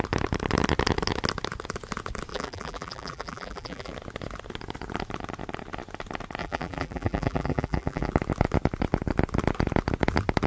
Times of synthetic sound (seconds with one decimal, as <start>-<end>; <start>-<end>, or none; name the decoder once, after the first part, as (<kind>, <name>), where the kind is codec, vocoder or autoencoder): 2.3-3.9 (vocoder, BigVGAN v2); 6.4-8.1